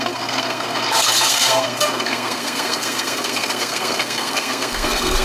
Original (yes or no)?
no